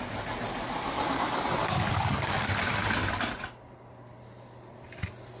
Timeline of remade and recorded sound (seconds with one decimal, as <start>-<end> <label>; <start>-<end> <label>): 0.0-1.6 recorded; 1.6-2.5 remade; 2.5-5.4 recorded